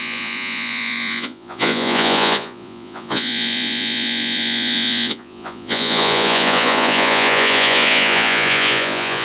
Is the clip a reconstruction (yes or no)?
yes